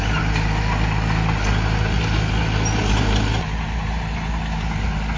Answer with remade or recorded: recorded